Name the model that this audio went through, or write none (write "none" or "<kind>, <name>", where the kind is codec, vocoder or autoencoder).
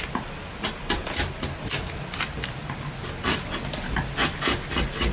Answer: none